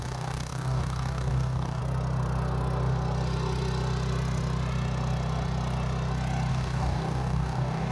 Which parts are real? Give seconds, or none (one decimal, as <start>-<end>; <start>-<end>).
1.8-6.5